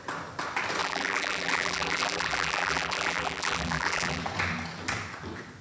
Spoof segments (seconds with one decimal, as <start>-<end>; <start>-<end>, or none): 0.8-4.2